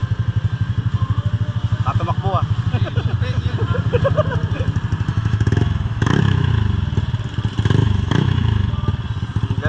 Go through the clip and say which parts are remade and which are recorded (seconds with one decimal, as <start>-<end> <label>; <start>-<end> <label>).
0.0-5.1 recorded; 5.1-6.5 remade; 6.5-7.8 recorded; 7.8-8.7 remade; 8.7-9.7 recorded

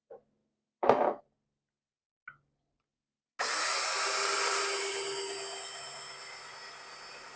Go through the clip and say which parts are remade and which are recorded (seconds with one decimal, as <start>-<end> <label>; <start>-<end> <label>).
0.0-0.4 recorded; 0.4-1.2 remade; 1.2-7.4 recorded

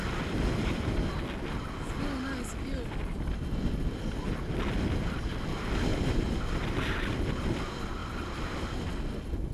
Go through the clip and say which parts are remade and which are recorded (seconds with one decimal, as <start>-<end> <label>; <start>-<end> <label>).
0.0-9.5 recorded

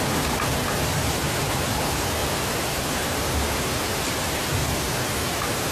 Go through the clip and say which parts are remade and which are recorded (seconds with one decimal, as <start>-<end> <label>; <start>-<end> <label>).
0.0-5.7 recorded